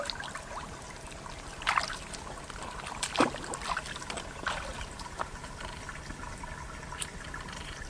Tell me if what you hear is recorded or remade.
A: recorded